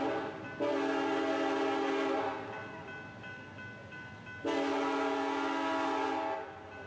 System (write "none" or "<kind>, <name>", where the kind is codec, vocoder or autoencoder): none